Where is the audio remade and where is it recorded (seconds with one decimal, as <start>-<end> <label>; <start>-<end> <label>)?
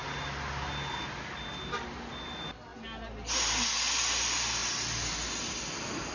0.0-6.1 recorded